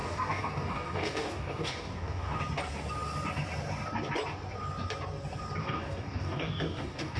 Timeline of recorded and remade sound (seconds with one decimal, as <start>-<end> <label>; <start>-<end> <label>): 0.0-2.4 remade; 2.4-5.6 recorded; 5.6-7.2 remade